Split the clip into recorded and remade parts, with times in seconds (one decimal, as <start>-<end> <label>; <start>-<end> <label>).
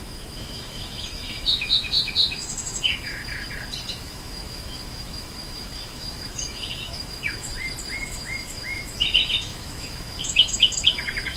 0.0-3.2 remade; 3.2-3.9 recorded; 3.9-7.5 remade; 7.5-8.0 recorded; 8.0-11.4 remade